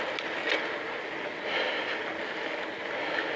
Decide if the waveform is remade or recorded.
recorded